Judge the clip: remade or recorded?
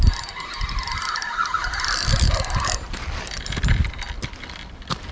recorded